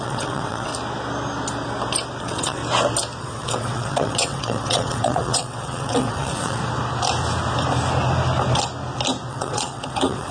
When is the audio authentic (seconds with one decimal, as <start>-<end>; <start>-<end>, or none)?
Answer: 0.7-2.2; 2.6-3.2; 6.6-9.3